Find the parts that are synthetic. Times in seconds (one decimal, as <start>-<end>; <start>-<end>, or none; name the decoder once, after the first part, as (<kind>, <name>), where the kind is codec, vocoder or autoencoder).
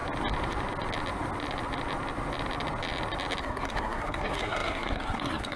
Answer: 3.4-5.6 (codec, SNAC)